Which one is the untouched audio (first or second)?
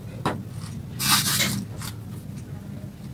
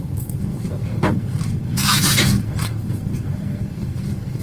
first